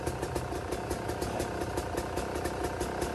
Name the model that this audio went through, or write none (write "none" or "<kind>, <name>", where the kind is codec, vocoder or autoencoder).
none